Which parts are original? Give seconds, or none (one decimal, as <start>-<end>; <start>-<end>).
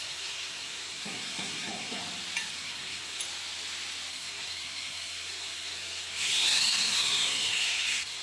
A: 2.0-2.5; 3.2-4.1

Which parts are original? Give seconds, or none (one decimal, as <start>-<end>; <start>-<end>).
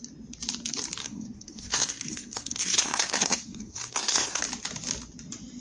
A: 0.0-1.0; 4.4-5.6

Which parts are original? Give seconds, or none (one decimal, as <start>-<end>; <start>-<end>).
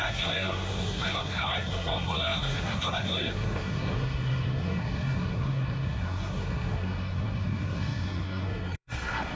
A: none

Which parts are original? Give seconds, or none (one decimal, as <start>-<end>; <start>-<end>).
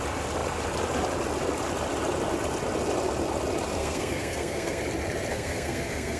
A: 0.0-3.8; 4.8-5.3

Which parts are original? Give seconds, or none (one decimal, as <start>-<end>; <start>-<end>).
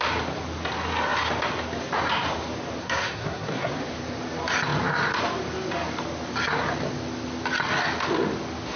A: 0.0-2.8; 3.7-8.8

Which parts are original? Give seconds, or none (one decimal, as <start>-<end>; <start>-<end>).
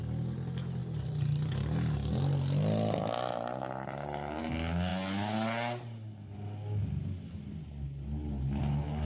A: 0.0-9.0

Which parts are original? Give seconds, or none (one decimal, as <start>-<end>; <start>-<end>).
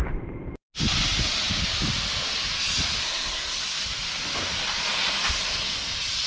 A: 0.0-3.0; 3.6-6.3